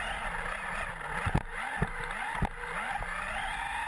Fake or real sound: real